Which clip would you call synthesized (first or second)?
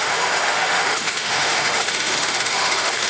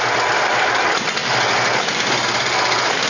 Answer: first